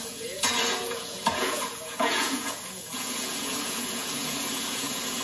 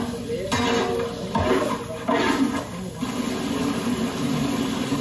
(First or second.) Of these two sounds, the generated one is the first